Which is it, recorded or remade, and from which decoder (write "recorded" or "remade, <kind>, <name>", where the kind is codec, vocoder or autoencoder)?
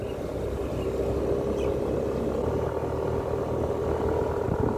recorded